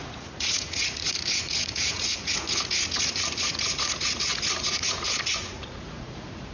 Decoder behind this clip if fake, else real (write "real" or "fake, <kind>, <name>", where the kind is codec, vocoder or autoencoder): fake, vocoder, Vocos